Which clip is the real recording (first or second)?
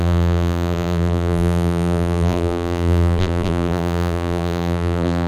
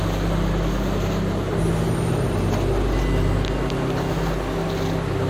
second